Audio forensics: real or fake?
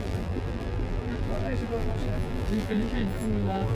fake